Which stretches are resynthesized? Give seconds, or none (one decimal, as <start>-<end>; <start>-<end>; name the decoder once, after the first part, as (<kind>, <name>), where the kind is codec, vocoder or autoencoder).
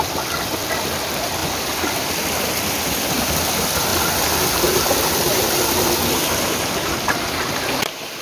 none